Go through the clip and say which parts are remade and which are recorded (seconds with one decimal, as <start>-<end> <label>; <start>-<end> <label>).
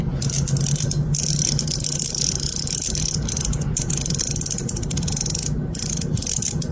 0.0-6.7 recorded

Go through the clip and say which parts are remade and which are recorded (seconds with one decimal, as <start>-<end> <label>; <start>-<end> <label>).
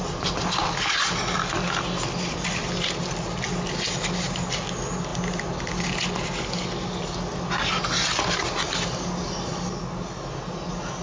0.0-11.0 recorded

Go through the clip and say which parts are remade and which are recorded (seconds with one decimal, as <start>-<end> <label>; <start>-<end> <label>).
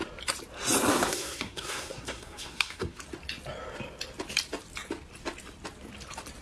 0.0-0.9 recorded; 0.9-3.0 remade; 3.0-6.4 recorded